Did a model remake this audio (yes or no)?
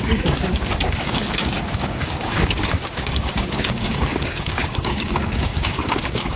yes